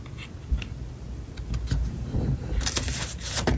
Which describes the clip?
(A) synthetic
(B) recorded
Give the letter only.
B